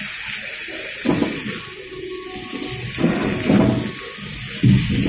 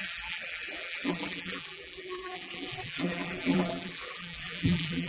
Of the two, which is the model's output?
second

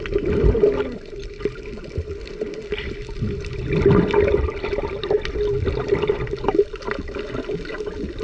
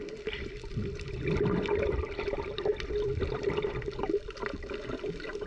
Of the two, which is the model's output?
second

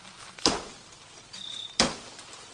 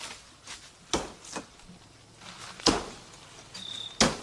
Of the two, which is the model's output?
first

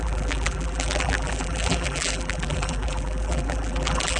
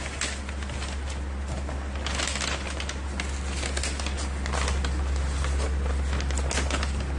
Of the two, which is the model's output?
first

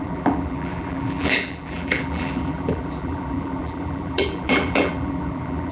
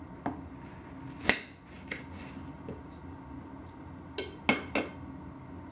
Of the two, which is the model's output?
first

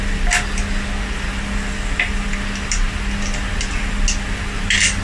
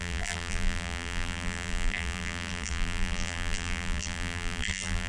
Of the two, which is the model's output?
second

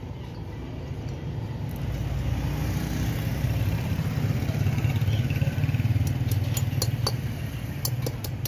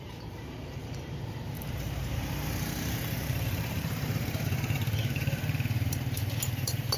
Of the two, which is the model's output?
second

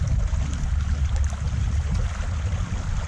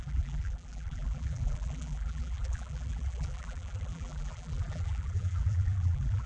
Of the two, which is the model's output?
second